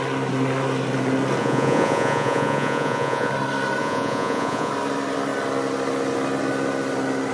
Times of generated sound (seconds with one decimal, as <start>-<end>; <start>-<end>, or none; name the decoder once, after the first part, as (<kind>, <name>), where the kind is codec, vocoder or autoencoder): 1.4-3.3 (vocoder, Vocos); 3.8-4.7